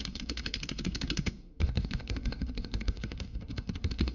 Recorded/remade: remade